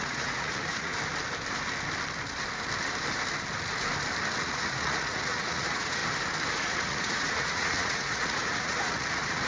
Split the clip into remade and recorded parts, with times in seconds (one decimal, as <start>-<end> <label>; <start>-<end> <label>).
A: 0.0-0.9 remade; 0.9-4.4 recorded; 4.4-6.0 remade; 6.0-6.5 recorded; 6.5-9.5 remade